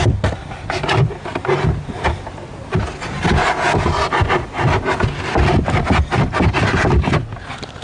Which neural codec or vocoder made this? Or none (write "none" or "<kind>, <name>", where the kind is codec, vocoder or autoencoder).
none